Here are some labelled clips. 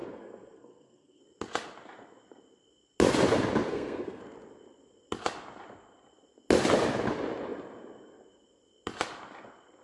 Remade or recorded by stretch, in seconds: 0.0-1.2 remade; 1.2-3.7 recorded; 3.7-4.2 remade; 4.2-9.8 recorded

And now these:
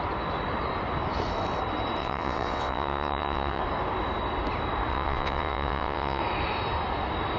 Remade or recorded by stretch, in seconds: 0.0-2.0 recorded; 2.0-3.6 remade; 3.6-4.9 recorded; 4.9-6.2 remade; 6.2-7.4 recorded

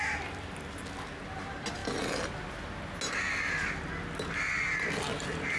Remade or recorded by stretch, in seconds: 0.0-5.6 recorded

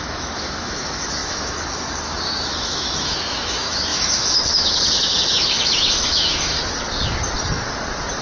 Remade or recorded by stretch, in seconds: 0.0-6.6 remade; 6.6-8.2 recorded

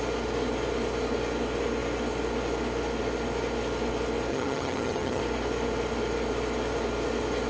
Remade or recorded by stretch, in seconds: 0.0-4.3 recorded; 4.3-5.2 remade; 5.2-7.5 recorded

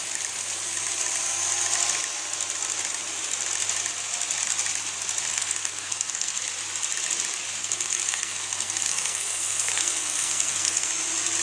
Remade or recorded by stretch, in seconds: 0.0-5.3 recorded; 5.3-6.4 remade; 6.4-7.6 recorded; 7.6-10.9 remade; 10.9-11.4 recorded